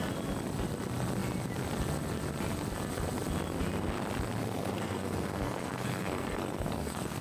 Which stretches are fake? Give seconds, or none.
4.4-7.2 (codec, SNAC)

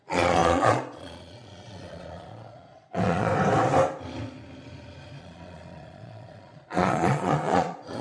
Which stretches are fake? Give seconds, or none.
0.0-3.3 (vocoder, Vocos); 5.2-8.0

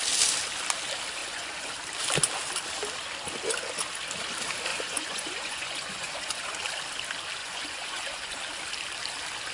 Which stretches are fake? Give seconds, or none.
1.2-1.7 (vocoder, Vocos); 4.7-6.5; 7.4-8.4

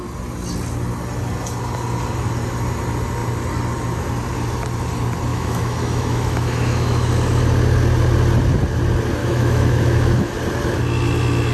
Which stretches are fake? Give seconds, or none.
5.3-7.1 (autoencoder, DAC-VAE); 9.2-10.4

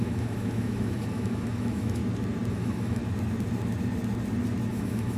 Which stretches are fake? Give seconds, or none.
0.0-2.0 (autoencoder, DAC-VAE); 2.5-3.0; 4.7-5.2

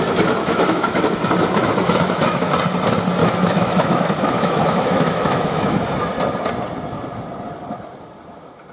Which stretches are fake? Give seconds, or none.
0.4-1.0 (autoencoder, DAC-VAE); 1.6-2.5; 3.2-5.9